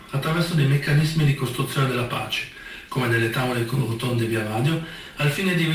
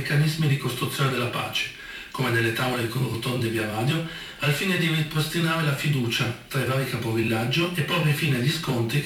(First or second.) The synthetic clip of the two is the second